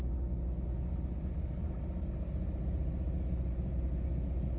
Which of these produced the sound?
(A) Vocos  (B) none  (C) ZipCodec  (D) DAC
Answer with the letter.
B